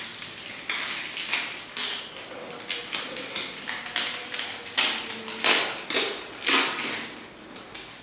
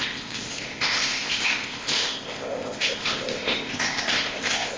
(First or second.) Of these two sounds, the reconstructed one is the second